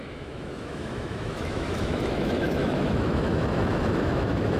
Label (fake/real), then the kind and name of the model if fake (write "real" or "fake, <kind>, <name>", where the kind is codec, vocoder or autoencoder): fake, autoencoder, DAC-VAE